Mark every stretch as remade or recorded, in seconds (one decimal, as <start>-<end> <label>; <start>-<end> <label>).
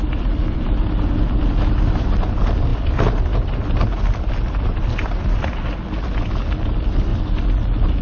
0.0-8.0 recorded